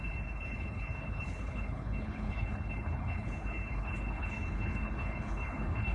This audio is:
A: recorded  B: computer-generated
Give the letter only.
B